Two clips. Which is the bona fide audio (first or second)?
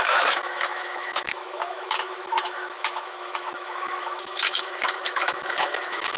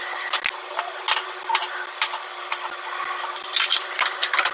second